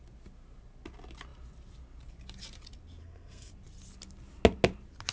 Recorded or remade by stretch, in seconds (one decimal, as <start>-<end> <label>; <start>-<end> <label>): 0.0-3.0 recorded; 3.0-3.5 remade; 3.5-5.1 recorded